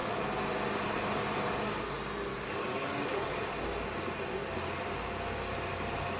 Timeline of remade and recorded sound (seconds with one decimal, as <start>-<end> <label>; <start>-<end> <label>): 0.0-2.3 recorded; 2.3-3.4 remade; 3.4-6.2 recorded